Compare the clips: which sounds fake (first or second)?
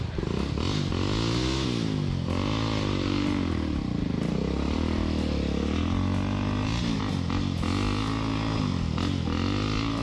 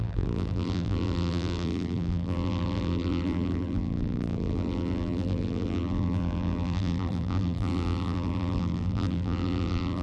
second